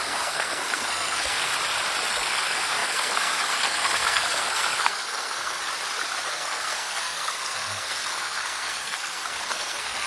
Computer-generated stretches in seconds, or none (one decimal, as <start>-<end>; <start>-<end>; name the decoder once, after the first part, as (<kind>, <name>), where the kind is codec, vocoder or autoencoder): 0.0-1.5 (codec, SNAC); 2.1-5.6; 6.3-10.1